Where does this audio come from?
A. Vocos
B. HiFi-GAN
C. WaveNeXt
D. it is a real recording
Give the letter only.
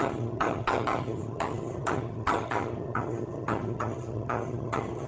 B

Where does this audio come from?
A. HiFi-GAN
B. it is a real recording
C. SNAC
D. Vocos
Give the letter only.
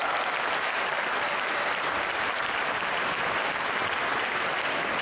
B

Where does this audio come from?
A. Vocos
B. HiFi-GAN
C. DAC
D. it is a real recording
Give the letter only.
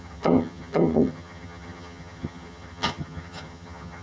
B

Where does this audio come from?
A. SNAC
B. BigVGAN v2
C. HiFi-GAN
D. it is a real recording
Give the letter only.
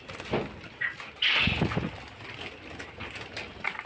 D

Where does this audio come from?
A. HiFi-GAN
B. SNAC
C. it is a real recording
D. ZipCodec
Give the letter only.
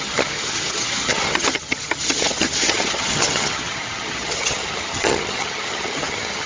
A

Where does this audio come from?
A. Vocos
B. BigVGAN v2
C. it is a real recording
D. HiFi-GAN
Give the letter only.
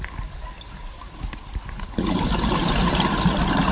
C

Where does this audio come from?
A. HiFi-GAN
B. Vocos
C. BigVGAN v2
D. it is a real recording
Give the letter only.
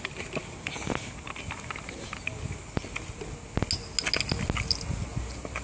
D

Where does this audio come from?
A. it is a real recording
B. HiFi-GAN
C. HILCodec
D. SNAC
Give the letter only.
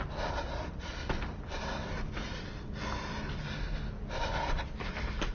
A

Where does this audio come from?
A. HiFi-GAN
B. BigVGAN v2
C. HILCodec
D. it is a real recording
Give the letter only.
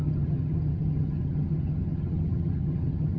A